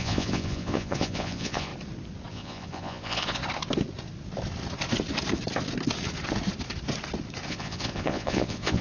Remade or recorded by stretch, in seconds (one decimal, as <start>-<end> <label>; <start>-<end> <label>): 0.0-1.7 remade; 1.7-2.3 recorded; 2.3-3.4 remade; 3.4-7.5 recorded; 7.5-8.8 remade